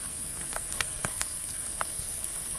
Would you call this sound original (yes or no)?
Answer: no